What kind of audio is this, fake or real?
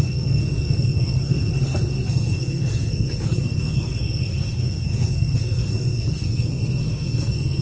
fake